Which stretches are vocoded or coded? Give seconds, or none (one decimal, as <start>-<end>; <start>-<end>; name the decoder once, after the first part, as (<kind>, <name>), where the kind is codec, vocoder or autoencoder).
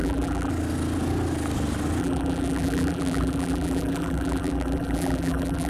0.0-0.5 (vocoder, BigVGAN v2); 2.0-5.7